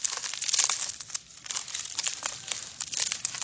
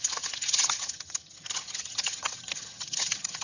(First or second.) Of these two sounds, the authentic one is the first